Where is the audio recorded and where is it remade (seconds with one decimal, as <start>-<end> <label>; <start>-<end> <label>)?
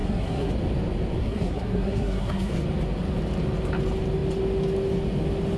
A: 0.0-0.5 remade; 0.5-1.2 recorded; 1.2-2.5 remade; 2.5-5.6 recorded